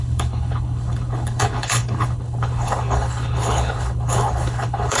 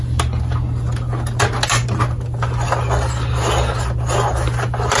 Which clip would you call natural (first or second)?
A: second